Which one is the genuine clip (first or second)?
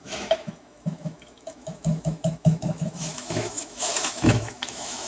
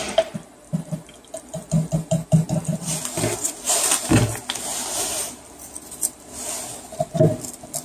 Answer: second